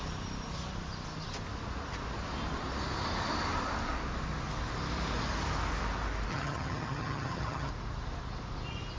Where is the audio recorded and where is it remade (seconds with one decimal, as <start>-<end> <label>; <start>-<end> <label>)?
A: 0.0-6.3 recorded; 6.3-7.7 remade; 7.7-9.0 recorded